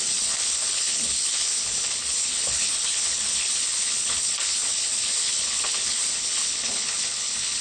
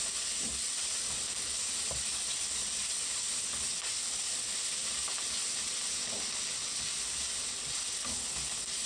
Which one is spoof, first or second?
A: first